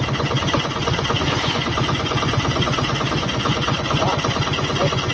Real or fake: fake